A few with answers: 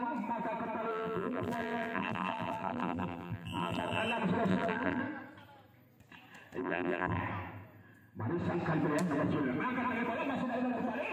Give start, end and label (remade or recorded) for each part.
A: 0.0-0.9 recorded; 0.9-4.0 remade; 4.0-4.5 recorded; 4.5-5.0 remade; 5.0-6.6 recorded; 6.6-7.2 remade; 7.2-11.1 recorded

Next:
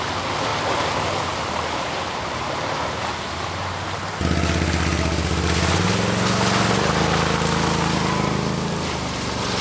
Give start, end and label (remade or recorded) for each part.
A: 0.0-0.5 recorded; 0.5-4.0 remade; 4.0-9.6 recorded

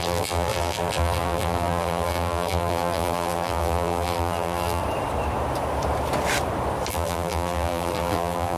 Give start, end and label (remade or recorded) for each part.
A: 0.0-4.8 remade; 4.8-6.9 recorded; 6.9-8.6 remade

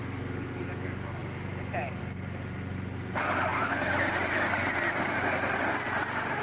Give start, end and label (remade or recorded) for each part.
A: 0.0-0.6 remade; 0.6-1.2 recorded; 1.2-2.0 remade; 2.0-3.5 recorded; 3.5-5.6 remade; 5.6-6.4 recorded

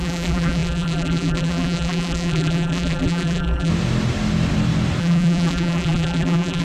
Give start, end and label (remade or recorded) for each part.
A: 0.0-3.7 remade; 3.7-5.0 recorded; 5.0-6.6 remade

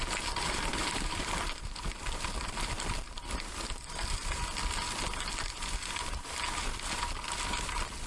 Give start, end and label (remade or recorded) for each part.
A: 0.0-0.7 recorded; 0.7-1.4 remade; 1.4-8.1 recorded

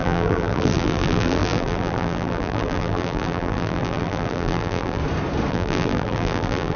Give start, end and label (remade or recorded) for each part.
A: 0.0-5.0 remade; 5.0-5.5 recorded; 5.5-6.8 remade